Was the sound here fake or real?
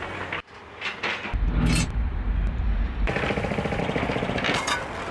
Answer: real